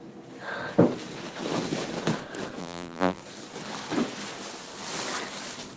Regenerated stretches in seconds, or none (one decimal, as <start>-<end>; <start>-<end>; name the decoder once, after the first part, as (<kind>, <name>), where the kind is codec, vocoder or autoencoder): 2.6-3.2 (vocoder, BigVGAN v2)